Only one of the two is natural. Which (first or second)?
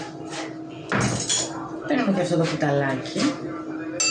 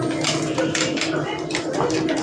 first